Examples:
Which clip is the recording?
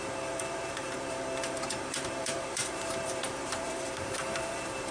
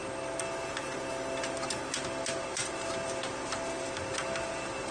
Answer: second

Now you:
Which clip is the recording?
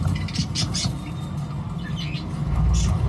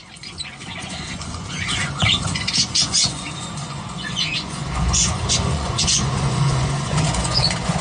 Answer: first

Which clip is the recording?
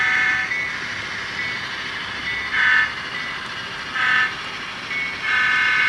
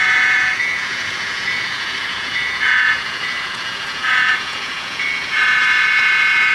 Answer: first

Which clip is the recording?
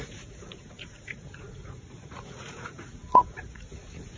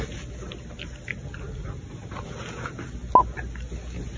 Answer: second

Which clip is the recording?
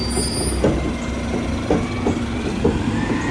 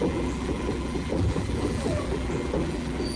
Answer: first